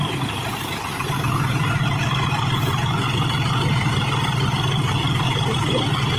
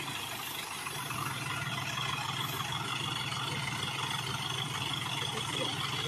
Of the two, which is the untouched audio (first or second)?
second